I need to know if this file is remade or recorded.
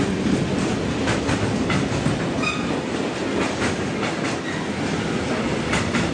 recorded